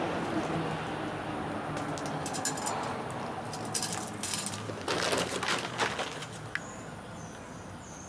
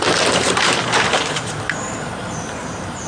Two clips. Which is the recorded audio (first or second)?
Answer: first